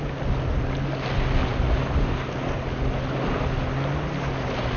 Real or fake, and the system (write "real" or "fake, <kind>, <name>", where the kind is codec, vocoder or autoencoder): real